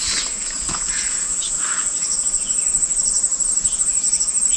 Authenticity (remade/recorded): remade